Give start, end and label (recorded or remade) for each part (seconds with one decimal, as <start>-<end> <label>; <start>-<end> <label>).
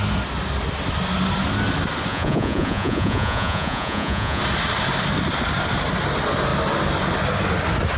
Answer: 0.0-2.1 recorded; 2.1-4.4 remade; 4.4-8.0 recorded